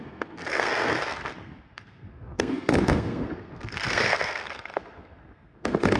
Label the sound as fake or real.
fake